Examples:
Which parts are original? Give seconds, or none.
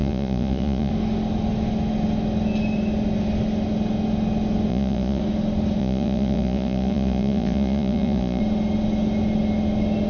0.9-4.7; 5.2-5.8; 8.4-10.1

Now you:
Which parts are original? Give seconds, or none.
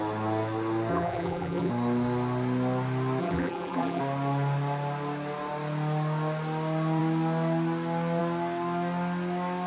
0.0-0.9; 1.7-3.2; 4.0-9.7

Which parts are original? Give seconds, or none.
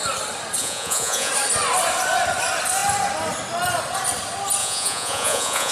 0.0-0.6; 1.3-4.6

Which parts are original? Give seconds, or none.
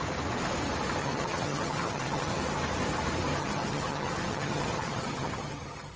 0.0-1.0; 2.4-3.4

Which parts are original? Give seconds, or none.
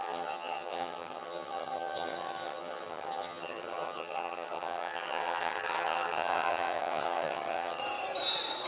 7.8-8.7